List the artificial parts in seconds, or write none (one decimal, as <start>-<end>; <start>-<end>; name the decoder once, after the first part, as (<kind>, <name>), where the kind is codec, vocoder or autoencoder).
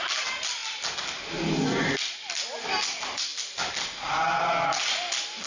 none